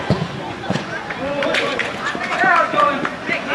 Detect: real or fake fake